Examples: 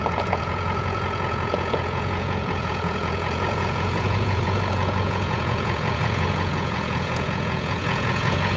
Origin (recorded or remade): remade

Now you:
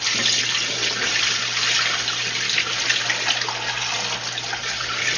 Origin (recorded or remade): recorded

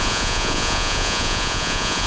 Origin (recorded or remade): remade